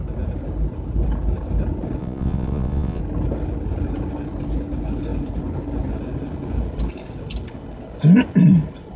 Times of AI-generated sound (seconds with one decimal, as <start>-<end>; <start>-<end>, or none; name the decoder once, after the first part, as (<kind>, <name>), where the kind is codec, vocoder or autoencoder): 2.0-3.0 (vocoder, Vocos)